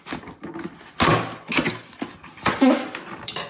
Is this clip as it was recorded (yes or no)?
yes